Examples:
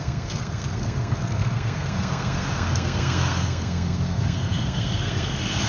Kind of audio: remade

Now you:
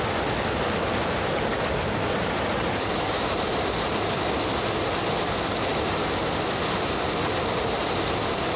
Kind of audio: recorded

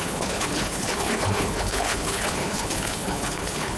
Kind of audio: remade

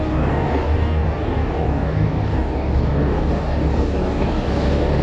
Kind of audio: remade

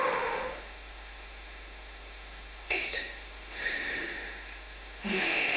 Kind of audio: remade